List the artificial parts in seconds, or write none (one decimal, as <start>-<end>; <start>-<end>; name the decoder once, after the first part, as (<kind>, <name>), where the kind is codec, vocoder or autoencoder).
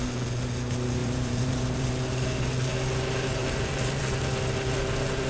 1.0-1.9 (vocoder, BigVGAN v2); 3.4-4.0